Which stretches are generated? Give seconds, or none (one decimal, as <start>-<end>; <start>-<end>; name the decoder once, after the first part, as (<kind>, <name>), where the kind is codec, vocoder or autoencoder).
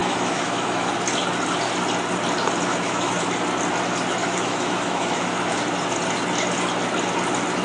0.0-0.9 (autoencoder, DAC-VAE); 2.7-3.2; 4.2-5.6